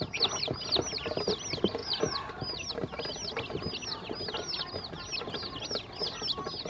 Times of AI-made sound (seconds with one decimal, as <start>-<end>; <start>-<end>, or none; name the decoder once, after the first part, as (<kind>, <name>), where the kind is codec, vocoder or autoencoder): 1.8-2.7 (vocoder, BigVGAN v2)